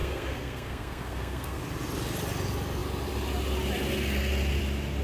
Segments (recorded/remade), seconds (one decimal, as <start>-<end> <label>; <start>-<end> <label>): 0.0-1.6 remade; 1.6-5.0 recorded